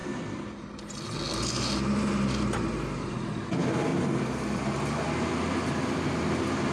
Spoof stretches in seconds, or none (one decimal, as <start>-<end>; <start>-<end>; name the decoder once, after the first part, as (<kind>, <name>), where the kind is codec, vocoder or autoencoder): 3.9-4.8 (vocoder, BigVGAN v2)